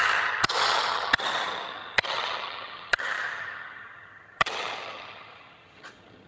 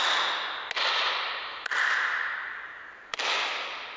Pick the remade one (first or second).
first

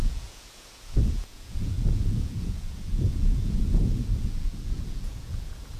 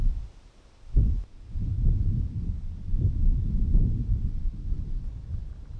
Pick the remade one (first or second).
first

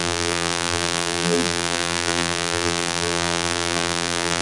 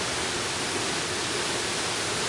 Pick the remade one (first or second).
first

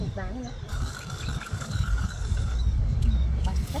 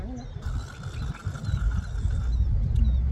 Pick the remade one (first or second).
first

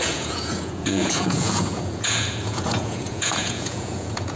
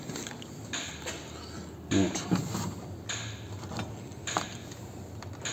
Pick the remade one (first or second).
first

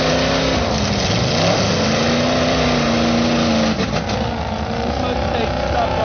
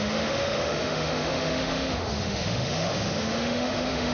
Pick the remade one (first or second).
second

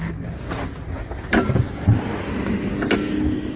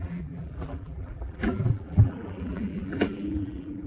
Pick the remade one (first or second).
second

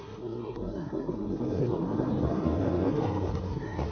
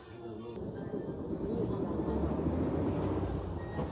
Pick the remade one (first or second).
first